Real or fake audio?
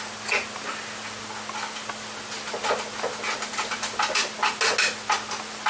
real